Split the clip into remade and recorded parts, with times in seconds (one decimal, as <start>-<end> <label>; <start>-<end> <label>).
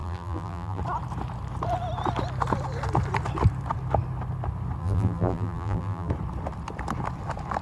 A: 0.0-0.8 remade; 0.8-4.8 recorded; 4.8-6.1 remade; 6.1-7.6 recorded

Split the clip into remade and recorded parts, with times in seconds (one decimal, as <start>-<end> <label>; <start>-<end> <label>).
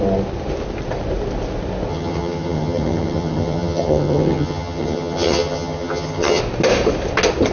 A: 0.0-1.9 recorded; 1.9-6.4 remade; 6.4-7.5 recorded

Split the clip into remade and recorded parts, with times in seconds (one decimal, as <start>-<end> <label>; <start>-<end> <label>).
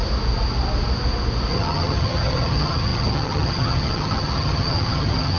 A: 0.0-1.5 recorded; 1.5-5.4 remade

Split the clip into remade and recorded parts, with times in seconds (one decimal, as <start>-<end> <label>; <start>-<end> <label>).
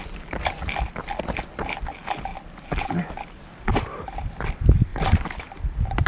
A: 0.0-4.9 recorded; 4.9-5.6 remade; 5.6-6.1 recorded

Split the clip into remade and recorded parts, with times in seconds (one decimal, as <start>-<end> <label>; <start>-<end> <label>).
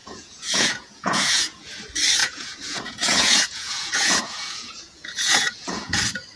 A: 0.0-1.8 remade; 1.8-2.2 recorded; 2.2-6.0 remade; 6.0-6.4 recorded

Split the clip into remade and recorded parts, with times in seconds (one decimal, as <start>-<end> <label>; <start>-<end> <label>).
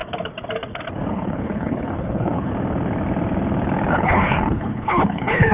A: 0.0-1.1 recorded; 1.1-2.5 remade; 2.5-3.9 recorded; 3.9-5.5 remade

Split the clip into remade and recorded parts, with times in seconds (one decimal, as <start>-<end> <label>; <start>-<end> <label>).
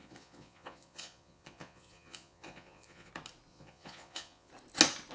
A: 0.0-3.1 remade; 3.1-3.5 recorded; 3.5-4.5 remade; 4.5-5.1 recorded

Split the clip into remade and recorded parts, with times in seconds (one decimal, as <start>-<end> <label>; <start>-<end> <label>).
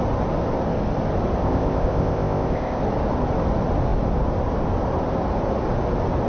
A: 0.0-1.4 recorded; 1.4-2.8 remade; 2.8-6.3 recorded